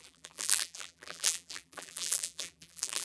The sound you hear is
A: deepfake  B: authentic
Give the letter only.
A